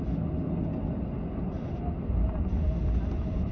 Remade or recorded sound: recorded